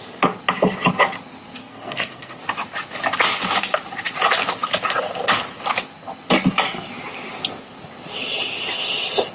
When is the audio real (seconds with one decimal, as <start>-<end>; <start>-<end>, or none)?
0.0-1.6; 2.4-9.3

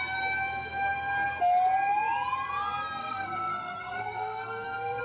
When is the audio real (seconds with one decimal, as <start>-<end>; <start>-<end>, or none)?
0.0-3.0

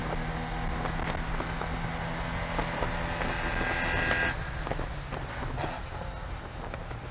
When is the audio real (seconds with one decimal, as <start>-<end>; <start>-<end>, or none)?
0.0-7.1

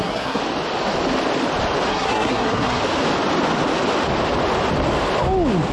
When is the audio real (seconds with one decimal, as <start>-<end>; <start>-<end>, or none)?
0.4-1.9; 2.8-5.7

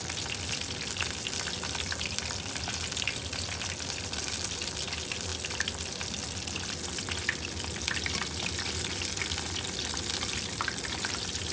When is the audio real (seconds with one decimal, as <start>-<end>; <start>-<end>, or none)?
0.0-11.5